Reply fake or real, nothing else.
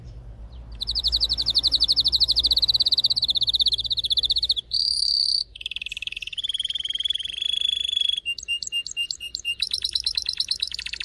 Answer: fake